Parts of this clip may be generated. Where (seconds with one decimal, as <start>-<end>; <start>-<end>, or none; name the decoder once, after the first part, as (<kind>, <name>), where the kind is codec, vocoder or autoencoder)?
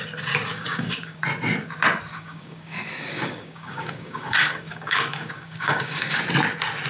0.5-1.2 (codec, DAC); 2.1-6.2